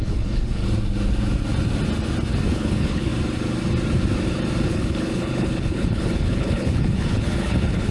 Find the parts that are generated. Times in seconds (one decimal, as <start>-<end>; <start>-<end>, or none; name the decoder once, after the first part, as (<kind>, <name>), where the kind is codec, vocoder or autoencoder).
0.0-0.6 (codec, HILCodec); 2.5-3.1; 4.7-7.9